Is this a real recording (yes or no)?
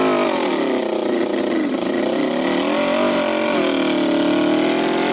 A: yes